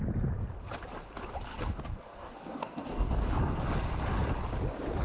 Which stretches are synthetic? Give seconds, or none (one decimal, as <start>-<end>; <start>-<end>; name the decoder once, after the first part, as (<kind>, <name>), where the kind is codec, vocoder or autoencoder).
1.5-3.1 (codec, SNAC)